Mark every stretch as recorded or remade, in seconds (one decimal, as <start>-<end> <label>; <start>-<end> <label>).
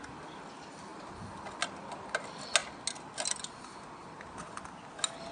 0.0-5.3 recorded